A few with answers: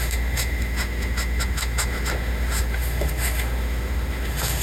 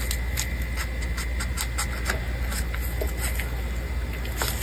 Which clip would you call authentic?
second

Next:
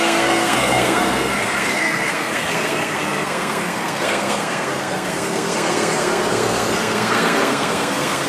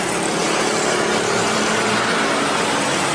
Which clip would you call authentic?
second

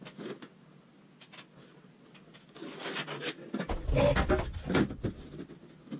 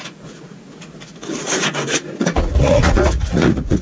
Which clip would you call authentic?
first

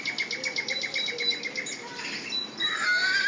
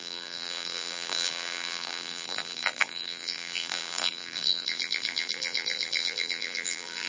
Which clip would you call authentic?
first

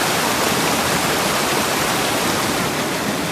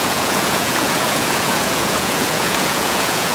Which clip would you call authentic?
first